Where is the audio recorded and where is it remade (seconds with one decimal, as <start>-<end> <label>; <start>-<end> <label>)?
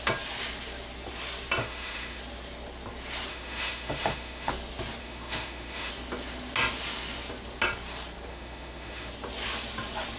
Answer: 0.0-1.6 recorded; 1.6-2.2 remade; 2.2-3.3 recorded; 3.3-4.5 remade; 4.5-5.0 recorded; 5.0-5.9 remade; 5.9-8.3 recorded; 8.3-9.1 remade; 9.1-10.2 recorded